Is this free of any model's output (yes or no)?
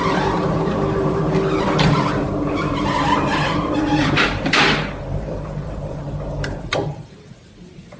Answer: no